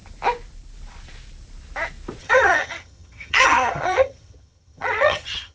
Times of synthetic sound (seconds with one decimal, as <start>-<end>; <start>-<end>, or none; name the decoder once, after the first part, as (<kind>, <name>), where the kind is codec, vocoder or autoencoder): 2.2-5.5 (vocoder, HiFi-GAN)